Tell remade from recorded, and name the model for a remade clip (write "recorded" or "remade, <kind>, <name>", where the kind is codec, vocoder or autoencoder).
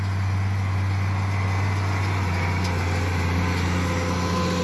recorded